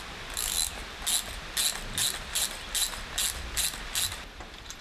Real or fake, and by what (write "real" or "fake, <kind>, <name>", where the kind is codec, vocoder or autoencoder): real